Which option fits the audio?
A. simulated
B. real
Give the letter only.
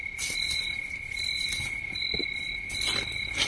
B